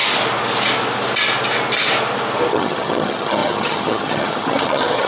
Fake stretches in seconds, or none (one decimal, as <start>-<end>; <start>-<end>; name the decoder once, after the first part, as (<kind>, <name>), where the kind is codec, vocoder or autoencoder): 2.5-5.1 (vocoder, HiFi-GAN)